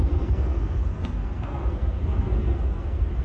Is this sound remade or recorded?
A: remade